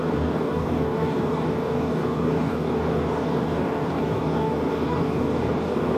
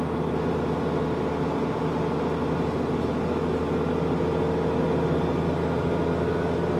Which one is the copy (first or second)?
first